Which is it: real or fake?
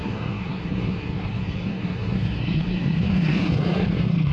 fake